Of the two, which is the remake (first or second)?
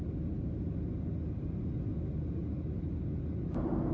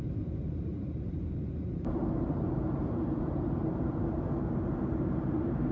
second